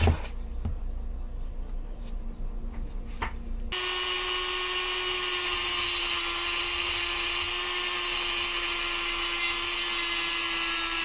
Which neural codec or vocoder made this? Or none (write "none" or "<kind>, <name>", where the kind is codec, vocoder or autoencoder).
none